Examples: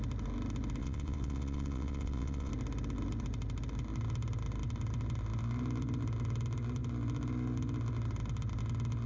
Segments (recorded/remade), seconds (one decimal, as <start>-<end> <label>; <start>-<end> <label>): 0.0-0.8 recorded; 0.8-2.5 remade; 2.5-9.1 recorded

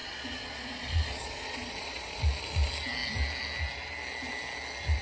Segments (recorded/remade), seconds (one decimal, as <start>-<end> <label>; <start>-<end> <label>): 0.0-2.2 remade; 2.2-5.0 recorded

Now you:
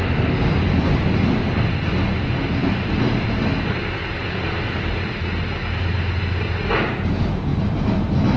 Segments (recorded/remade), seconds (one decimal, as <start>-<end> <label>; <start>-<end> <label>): 0.0-7.5 recorded; 7.5-8.4 remade

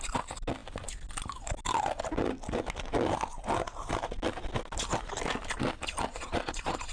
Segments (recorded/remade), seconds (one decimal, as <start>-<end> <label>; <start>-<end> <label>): 0.0-6.1 recorded; 6.1-6.9 remade